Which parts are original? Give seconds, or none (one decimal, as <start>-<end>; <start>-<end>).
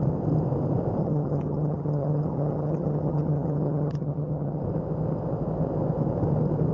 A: 0.0-1.0; 4.6-6.7